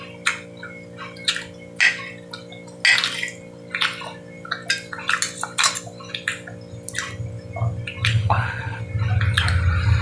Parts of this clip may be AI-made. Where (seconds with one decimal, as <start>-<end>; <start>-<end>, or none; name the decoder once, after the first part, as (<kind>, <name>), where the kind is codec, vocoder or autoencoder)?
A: 8.1-8.8 (codec, HILCodec)